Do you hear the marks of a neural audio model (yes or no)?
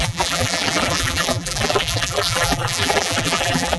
yes